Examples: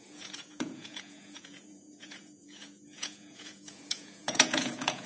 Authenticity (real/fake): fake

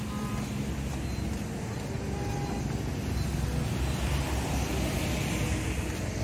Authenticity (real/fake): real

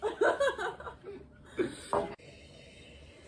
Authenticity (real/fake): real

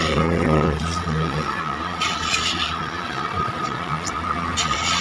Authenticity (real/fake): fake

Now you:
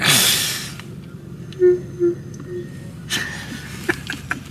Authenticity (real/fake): real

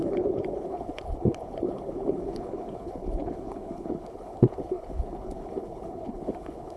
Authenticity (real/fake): fake